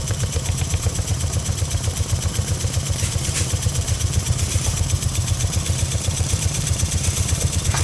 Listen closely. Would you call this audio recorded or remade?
remade